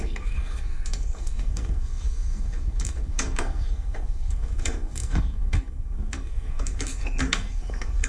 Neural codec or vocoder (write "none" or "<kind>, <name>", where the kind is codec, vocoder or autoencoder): codec, SNAC